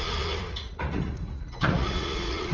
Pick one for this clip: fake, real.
fake